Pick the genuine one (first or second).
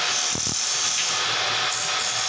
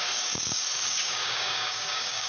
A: first